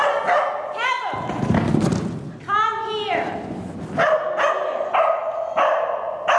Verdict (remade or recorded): recorded